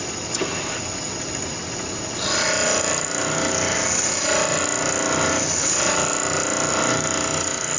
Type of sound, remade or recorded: recorded